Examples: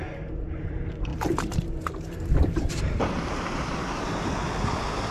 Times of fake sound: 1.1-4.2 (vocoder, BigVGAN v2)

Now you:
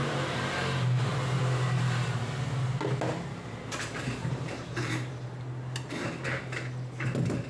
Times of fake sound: 0.0-1.4 (vocoder, BigVGAN v2); 4.2-5.1

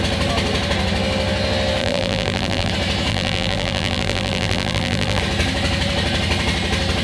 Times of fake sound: 1.8-2.7 (vocoder, BigVGAN v2); 3.1-5.2

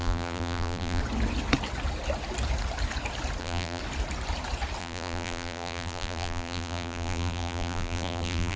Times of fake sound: 0.0-1.0 (vocoder, BigVGAN v2); 3.4-3.8; 4.8-8.6

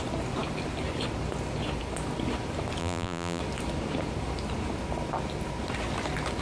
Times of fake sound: 2.8-3.4 (vocoder, BigVGAN v2)

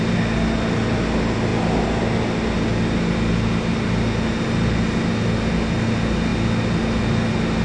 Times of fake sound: none

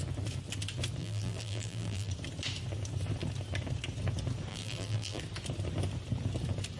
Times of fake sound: 1.0-2.1 (vocoder, BigVGAN v2); 4.5-5.2